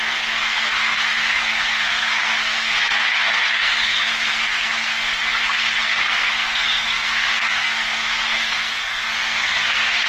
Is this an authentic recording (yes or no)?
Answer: no